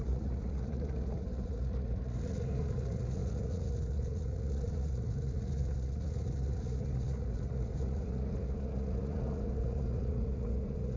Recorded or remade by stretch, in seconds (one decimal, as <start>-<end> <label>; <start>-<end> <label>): 0.0-11.0 remade